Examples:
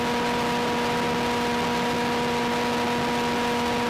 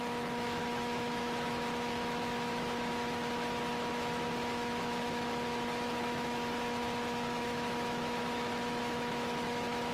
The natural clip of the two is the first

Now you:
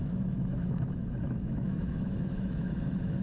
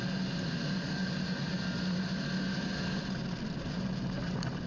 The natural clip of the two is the second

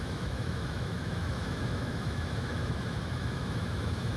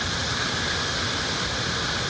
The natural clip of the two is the second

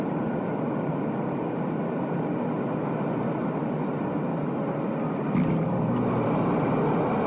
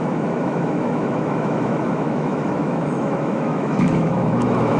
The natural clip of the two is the first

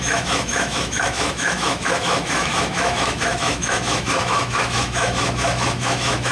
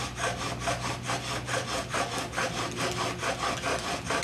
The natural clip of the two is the second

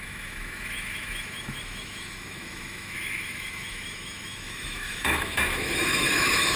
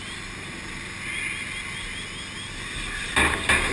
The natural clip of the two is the second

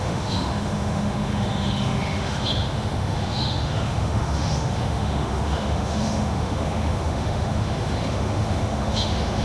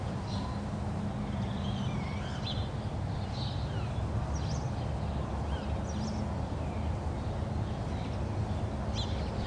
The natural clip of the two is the second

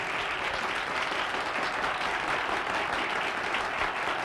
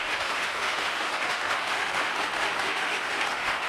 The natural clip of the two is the first